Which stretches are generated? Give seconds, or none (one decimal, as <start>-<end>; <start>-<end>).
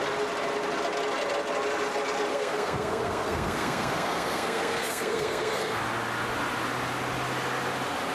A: 2.3-5.8